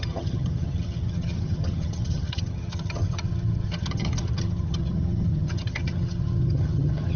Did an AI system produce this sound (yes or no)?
yes